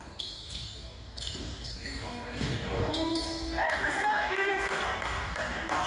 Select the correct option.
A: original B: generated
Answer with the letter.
B